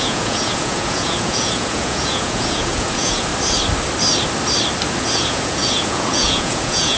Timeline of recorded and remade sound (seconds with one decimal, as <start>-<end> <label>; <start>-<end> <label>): 0.0-3.3 remade; 3.3-5.0 recorded; 5.0-7.0 remade